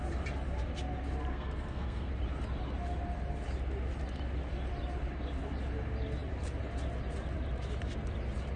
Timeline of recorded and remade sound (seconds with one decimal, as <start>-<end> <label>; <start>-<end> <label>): 0.0-1.3 recorded; 1.3-2.1 remade; 2.1-8.6 recorded